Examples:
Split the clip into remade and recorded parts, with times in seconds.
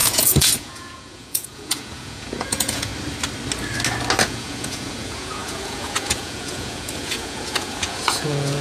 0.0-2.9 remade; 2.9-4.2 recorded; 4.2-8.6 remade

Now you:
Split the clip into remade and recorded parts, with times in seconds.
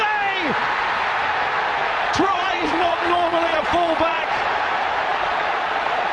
0.0-1.8 recorded; 1.8-4.5 remade; 4.5-5.1 recorded; 5.1-6.1 remade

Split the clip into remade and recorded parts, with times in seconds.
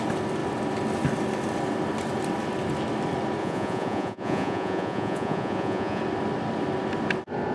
0.0-3.4 recorded; 3.4-6.0 remade; 6.0-7.5 recorded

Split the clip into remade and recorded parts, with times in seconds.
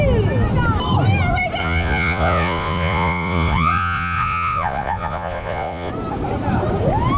0.0-1.6 recorded; 1.6-5.9 remade; 5.9-7.2 recorded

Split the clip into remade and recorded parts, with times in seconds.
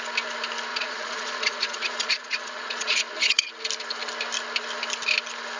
0.0-0.7 recorded; 0.7-3.5 remade; 3.5-5.6 recorded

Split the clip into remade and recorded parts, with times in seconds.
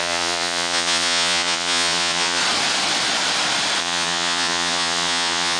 0.0-2.4 remade; 2.4-3.8 recorded; 3.8-5.6 remade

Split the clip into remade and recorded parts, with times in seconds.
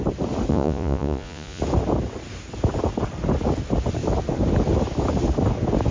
0.0-0.5 recorded; 0.5-1.6 remade; 1.6-5.9 recorded